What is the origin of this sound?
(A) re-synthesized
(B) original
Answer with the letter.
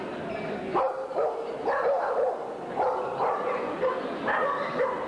B